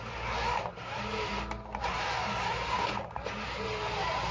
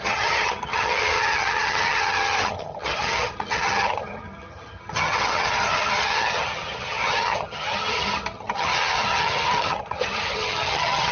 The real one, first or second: first